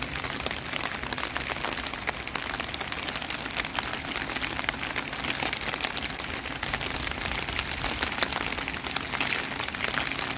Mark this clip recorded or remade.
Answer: recorded